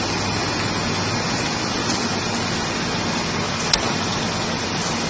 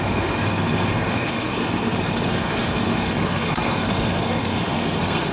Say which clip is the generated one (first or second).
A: second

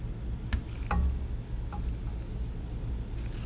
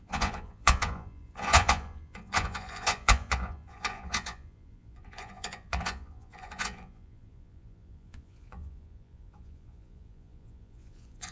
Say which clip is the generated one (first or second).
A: second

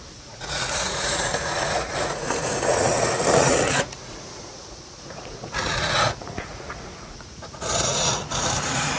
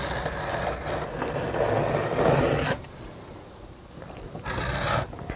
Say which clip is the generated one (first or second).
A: first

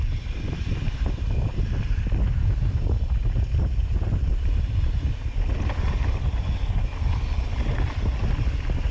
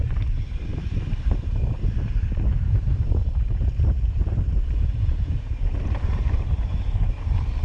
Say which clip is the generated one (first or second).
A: second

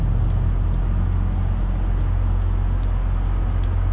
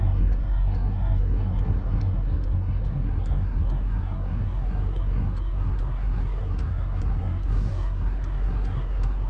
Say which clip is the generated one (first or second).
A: second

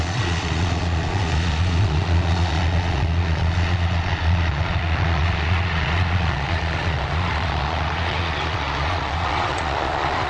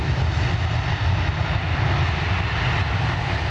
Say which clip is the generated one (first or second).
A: first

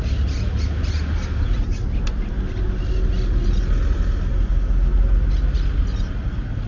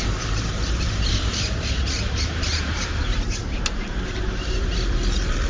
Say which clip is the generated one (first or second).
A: second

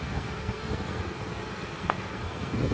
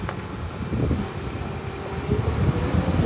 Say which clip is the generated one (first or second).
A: first